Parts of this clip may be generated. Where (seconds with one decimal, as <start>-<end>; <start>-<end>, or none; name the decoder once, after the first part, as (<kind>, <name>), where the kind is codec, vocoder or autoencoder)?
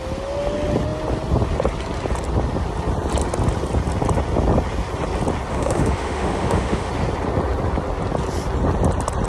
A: 5.5-6.9 (autoencoder, DAC-VAE)